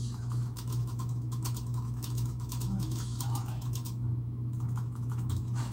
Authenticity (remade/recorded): remade